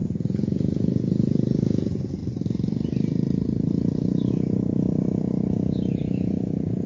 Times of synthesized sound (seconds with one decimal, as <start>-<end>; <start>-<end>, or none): 0.0-2.2; 4.3-4.7; 5.9-6.9